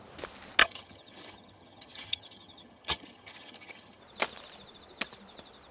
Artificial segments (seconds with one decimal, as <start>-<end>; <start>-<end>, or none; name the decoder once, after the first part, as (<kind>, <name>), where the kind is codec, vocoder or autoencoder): 0.6-4.0 (vocoder, HiFi-GAN)